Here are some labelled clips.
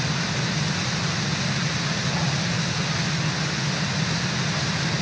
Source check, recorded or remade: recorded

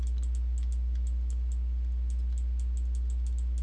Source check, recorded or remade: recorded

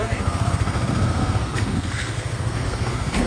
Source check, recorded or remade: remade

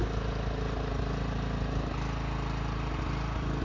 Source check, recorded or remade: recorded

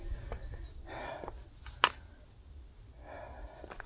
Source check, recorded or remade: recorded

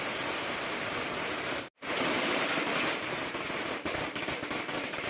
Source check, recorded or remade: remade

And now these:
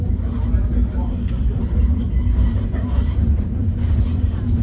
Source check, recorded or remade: remade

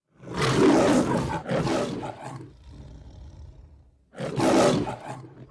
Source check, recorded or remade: recorded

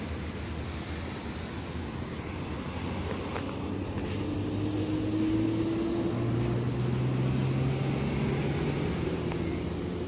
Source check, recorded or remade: recorded